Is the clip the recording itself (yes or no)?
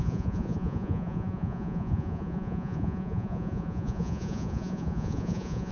no